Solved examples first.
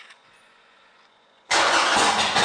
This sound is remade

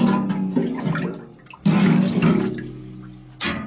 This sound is recorded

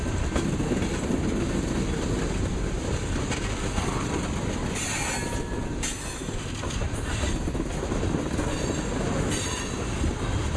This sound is recorded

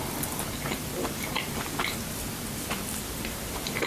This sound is remade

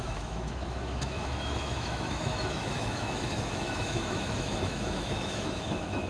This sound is remade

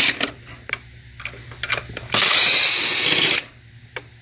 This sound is recorded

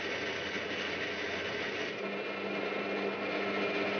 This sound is recorded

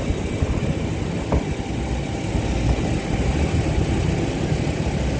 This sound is recorded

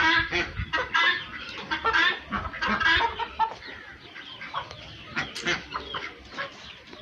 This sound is recorded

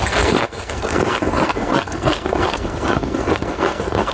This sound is remade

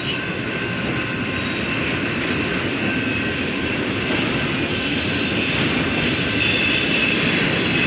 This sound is recorded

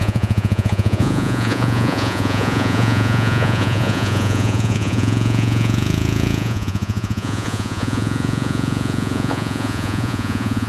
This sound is remade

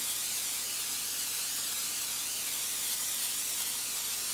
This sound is recorded